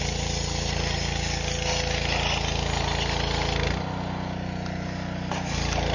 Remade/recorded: recorded